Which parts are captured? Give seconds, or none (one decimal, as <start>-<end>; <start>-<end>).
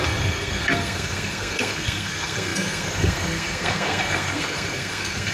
none